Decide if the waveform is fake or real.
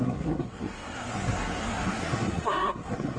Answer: fake